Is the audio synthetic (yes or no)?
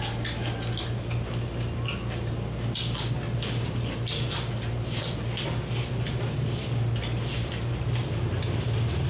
no